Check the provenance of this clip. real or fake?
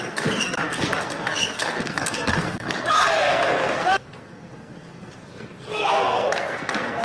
fake